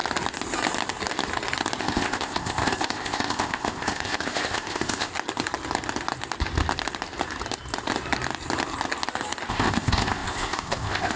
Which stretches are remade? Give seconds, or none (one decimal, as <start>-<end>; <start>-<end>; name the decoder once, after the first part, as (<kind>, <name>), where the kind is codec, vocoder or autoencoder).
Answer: 1.8-5.1 (codec, ZipCodec); 9.5-11.2